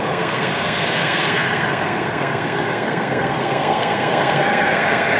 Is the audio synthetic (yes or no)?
yes